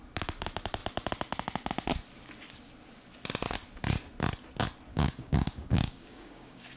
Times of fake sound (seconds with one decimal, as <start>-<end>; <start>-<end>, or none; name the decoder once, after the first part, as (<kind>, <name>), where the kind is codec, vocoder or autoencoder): 4.9-6.8 (codec, DAC)